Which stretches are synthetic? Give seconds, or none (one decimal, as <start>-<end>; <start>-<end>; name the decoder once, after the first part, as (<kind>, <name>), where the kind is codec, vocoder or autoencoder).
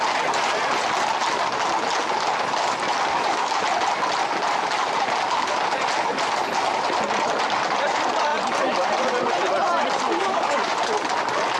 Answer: 3.1-3.6 (codec, DAC); 10.2-10.7